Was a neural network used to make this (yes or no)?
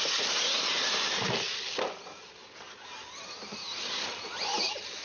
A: no